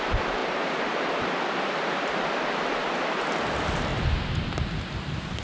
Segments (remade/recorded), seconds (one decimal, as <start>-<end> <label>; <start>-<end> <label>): 0.0-5.4 recorded